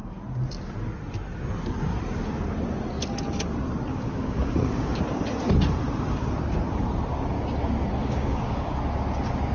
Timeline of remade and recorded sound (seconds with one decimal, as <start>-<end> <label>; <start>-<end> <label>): 0.0-3.9 recorded; 3.9-5.0 remade; 5.0-8.0 recorded; 8.0-8.7 remade; 8.7-9.5 recorded